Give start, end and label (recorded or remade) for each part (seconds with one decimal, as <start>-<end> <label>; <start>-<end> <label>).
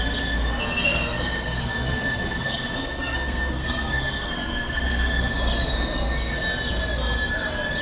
0.0-0.6 recorded; 0.6-5.3 remade; 5.3-7.8 recorded